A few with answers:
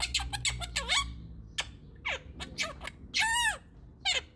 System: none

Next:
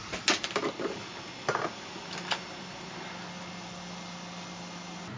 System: none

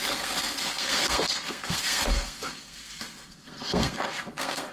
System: codec, SNAC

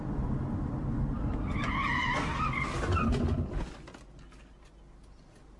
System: none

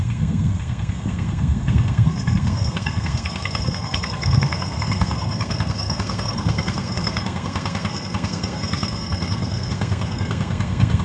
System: codec, SNAC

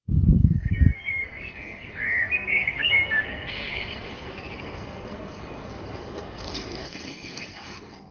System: codec, SNAC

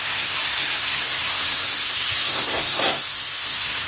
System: codec, SNAC